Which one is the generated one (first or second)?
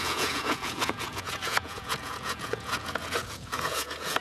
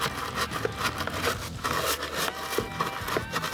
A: first